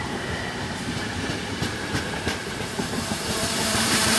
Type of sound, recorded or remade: remade